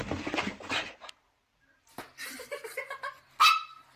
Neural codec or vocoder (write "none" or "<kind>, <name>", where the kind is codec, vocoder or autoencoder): none